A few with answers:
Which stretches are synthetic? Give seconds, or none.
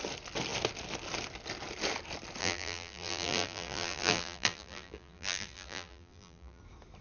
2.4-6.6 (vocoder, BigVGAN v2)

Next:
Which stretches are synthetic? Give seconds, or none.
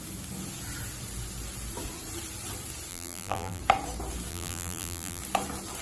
2.9-3.6 (vocoder, BigVGAN v2); 4.3-5.2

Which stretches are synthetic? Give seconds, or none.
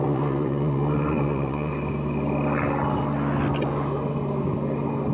0.0-1.7 (vocoder, Vocos)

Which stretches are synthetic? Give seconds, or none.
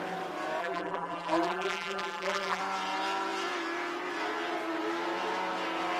0.6-2.6 (vocoder, BigVGAN v2)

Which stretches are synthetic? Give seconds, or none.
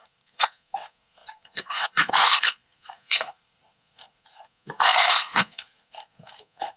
0.0-6.8 (codec, SNAC)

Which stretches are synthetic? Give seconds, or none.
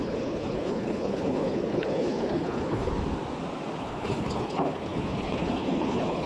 0.0-2.9 (codec, HILCodec); 3.8-6.3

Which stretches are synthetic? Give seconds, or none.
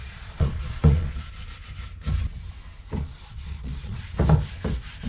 0.0-1.3 (vocoder, Vocos); 3.0-4.0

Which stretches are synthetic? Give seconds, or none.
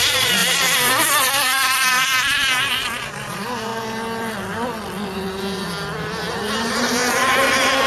0.0-3.7 (vocoder, BigVGAN v2); 6.6-7.9